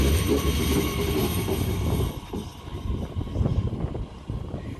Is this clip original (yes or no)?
yes